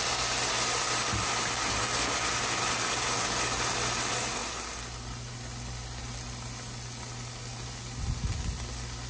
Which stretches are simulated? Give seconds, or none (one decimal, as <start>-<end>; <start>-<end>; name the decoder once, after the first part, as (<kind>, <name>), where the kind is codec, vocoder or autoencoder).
none